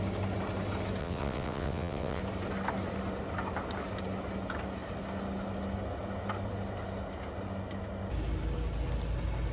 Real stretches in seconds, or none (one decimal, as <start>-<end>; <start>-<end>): 0.0-1.0; 2.2-9.5